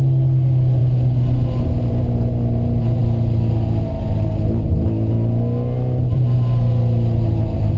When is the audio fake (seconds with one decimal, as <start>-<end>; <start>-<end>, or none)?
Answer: none